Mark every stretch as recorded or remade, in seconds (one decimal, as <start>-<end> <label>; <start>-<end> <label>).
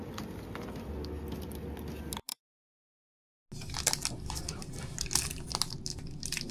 0.0-6.5 recorded